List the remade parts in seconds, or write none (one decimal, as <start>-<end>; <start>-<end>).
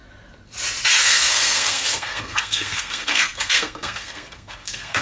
1.0-5.0